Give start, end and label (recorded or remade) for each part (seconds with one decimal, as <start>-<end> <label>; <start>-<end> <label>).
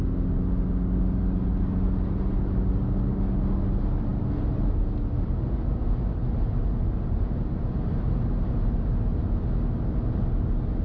0.0-10.8 recorded